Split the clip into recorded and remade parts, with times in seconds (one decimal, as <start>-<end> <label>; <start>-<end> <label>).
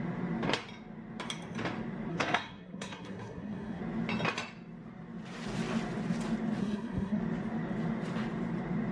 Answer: 0.0-2.1 recorded; 2.1-3.8 remade; 3.8-6.6 recorded; 6.6-7.2 remade; 7.2-8.9 recorded